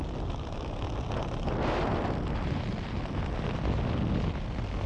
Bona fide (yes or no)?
yes